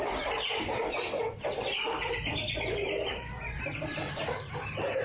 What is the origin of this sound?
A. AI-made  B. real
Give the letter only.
A